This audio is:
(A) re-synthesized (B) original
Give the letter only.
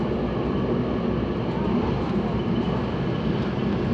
B